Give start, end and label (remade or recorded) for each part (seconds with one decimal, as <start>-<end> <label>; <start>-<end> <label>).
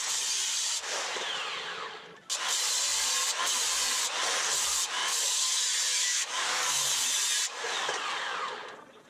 0.0-5.0 recorded; 5.0-5.6 remade; 5.6-6.0 recorded; 6.0-6.8 remade; 6.8-9.1 recorded